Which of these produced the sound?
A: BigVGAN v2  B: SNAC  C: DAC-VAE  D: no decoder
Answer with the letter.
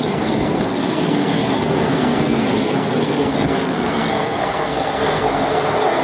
B